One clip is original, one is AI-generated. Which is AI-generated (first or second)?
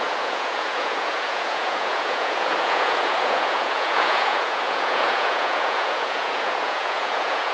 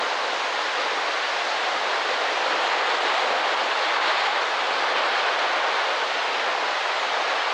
first